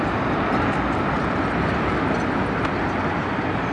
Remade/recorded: recorded